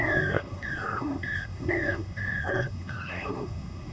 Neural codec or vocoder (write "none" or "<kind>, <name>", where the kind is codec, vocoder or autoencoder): codec, SNAC